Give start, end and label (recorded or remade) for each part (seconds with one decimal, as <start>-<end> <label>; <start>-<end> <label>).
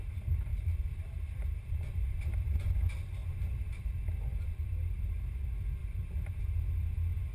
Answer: 0.0-7.3 remade